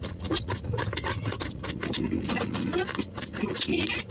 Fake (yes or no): yes